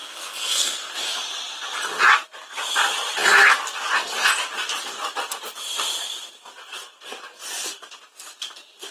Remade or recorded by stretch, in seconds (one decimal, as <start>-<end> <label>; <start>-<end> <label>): 0.0-0.9 remade; 0.9-8.9 recorded